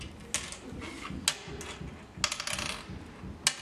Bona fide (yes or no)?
yes